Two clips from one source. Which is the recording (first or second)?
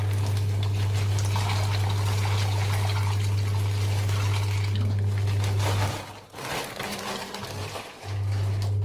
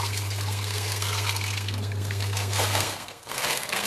first